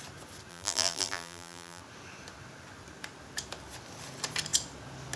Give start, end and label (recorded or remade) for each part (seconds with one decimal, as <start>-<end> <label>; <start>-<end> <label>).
0.0-0.5 recorded; 0.5-1.8 remade; 1.8-5.2 recorded